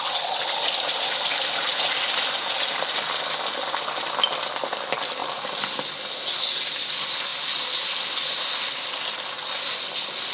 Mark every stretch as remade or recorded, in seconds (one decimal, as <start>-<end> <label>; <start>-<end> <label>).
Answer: 0.0-5.2 recorded; 5.2-5.7 remade; 5.7-10.3 recorded